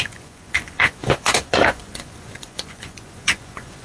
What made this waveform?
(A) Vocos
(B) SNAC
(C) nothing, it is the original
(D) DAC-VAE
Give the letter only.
A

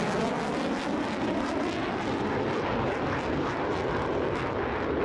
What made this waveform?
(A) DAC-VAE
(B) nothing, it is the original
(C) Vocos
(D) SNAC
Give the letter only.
B